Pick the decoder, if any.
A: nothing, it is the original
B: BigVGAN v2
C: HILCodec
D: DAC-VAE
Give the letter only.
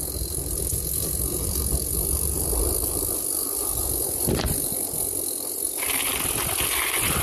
A